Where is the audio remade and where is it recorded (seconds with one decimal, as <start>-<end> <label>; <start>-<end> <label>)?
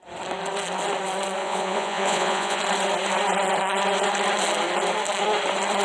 0.0-1.4 recorded; 1.4-2.6 remade; 2.6-5.8 recorded